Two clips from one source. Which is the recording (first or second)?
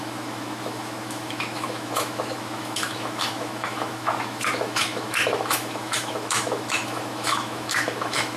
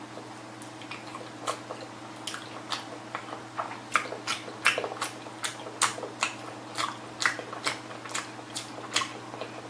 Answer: second